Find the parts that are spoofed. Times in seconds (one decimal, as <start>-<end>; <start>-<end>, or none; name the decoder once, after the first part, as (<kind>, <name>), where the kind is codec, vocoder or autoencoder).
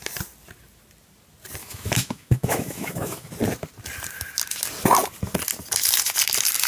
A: 1.6-3.3 (autoencoder, DAC-VAE)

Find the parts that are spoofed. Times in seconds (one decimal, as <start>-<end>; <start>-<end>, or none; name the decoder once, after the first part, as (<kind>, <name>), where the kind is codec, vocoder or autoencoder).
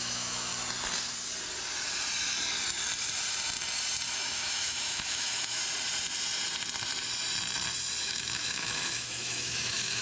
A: 0.0-0.5 (autoencoder, DAC-VAE); 4.2-5.6; 8.0-10.0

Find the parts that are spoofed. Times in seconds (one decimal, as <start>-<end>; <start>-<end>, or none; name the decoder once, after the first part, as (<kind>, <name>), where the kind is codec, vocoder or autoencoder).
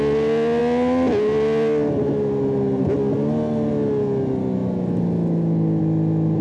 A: none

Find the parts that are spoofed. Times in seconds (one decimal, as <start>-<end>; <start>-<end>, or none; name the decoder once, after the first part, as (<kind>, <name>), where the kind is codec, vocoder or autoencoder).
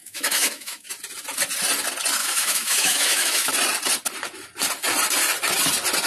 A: 0.0-0.9 (autoencoder, DAC-VAE); 2.2-3.5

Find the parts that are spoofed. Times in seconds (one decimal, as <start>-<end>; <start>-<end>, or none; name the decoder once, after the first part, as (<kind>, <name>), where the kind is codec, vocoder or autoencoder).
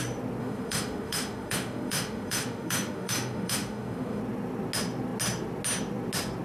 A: 0.4-4.2 (autoencoder, DAC-VAE)